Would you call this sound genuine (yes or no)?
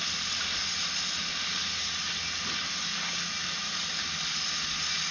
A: yes